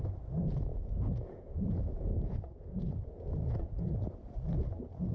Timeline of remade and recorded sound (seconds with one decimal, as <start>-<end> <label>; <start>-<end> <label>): 0.0-0.7 recorded; 0.7-3.8 remade; 3.8-5.1 recorded